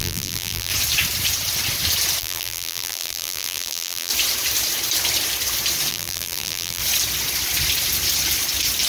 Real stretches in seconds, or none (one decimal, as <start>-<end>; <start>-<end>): 0.7-2.2; 4.1-5.9; 6.8-8.9